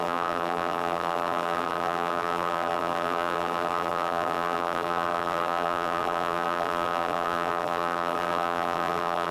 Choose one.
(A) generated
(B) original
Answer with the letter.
A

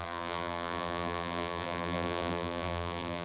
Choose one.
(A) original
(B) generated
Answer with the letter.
B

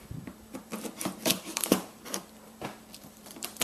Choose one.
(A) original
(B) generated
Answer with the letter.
B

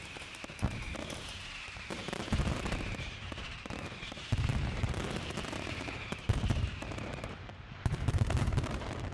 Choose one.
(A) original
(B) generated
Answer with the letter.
B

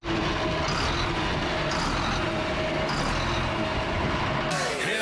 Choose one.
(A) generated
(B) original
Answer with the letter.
B